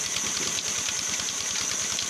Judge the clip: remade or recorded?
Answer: remade